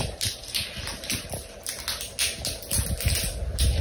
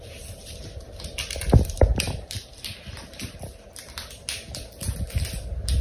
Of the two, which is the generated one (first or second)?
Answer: second